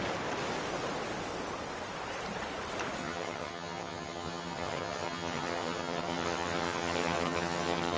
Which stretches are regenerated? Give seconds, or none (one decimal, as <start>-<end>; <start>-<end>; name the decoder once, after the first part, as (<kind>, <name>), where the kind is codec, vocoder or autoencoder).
3.0-8.0 (vocoder, HiFi-GAN)